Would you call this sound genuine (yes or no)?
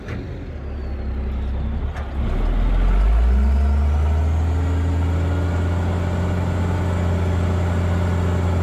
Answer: yes